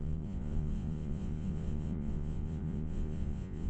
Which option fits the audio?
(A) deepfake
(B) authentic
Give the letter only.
A